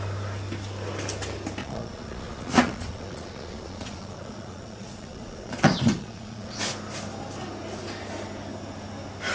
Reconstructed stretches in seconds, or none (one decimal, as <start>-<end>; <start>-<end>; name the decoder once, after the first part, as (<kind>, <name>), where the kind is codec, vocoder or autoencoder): 1.6-6.6 (vocoder, Vocos)